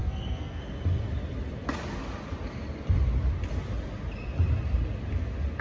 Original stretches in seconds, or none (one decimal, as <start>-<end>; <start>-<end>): 0.6-5.6